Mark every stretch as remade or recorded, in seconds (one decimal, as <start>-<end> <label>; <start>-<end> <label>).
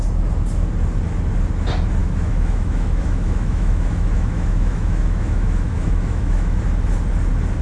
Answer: 0.0-2.0 recorded; 2.0-6.6 remade; 6.6-7.6 recorded